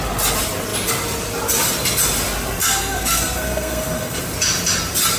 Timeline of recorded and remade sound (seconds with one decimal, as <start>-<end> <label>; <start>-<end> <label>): 0.0-2.6 recorded; 2.6-4.2 remade; 4.2-5.2 recorded